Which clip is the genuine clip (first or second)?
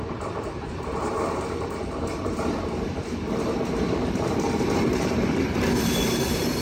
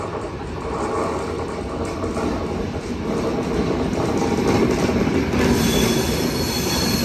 second